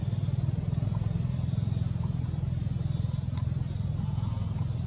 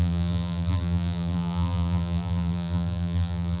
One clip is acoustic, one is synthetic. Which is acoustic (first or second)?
first